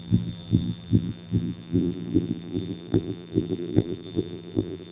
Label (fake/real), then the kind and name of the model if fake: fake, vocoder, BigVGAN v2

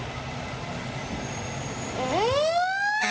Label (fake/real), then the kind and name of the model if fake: real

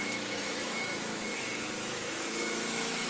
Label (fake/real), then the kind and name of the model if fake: fake, autoencoder, DAC-VAE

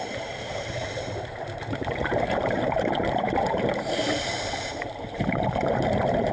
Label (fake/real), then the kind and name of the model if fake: fake, vocoder, BigVGAN v2